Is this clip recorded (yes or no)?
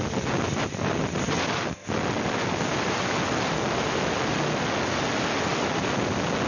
yes